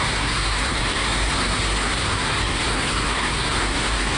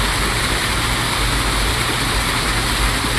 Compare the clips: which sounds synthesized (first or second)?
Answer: first